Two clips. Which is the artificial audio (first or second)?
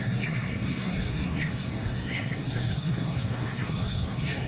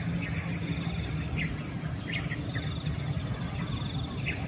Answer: first